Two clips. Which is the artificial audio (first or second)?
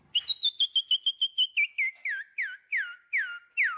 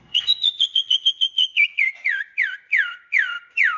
second